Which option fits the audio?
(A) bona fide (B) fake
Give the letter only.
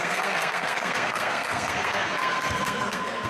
B